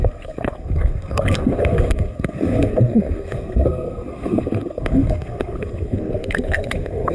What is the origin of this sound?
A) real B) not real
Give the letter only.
B